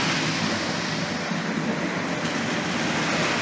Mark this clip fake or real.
real